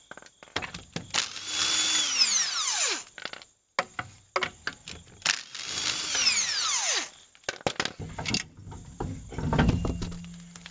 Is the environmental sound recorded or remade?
recorded